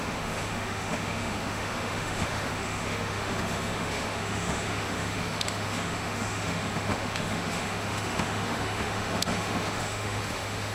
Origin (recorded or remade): remade